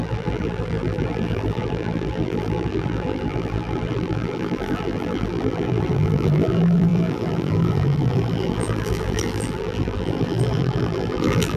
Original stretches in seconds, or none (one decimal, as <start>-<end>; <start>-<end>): none